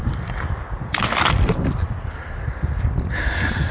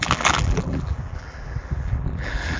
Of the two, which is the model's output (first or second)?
second